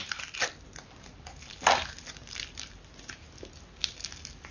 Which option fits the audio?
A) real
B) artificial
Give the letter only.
A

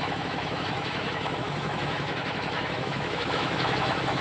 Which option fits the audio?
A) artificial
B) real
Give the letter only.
A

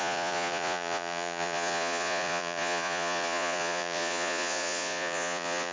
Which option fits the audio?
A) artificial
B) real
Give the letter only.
A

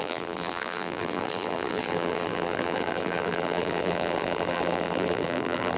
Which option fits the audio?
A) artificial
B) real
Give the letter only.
A